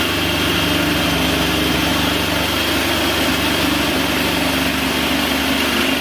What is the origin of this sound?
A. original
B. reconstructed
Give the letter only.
A